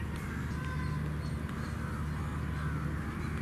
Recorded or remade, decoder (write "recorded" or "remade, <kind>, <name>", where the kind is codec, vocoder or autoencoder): recorded